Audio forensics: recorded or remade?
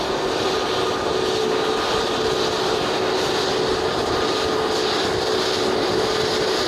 recorded